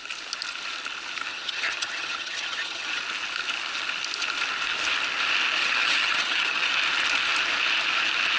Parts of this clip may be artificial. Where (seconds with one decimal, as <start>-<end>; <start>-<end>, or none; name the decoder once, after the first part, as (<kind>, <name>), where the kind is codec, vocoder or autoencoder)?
1.3-3.0 (vocoder, HiFi-GAN); 5.6-6.7